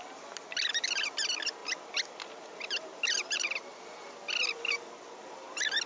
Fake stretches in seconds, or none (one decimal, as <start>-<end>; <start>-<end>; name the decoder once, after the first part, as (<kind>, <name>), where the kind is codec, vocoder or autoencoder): none